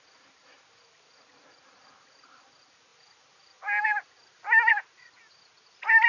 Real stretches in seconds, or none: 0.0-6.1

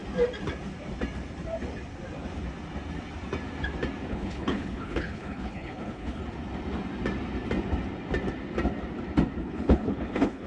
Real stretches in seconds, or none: 0.0-4.1; 6.2-9.4

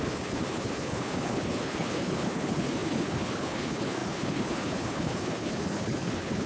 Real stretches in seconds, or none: none

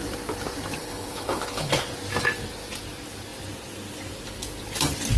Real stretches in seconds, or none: 0.0-0.8; 1.8-5.2

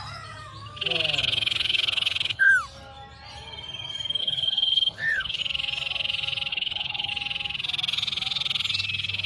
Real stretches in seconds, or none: 0.0-1.2; 2.5-4.2; 5.4-6.5; 7.1-9.3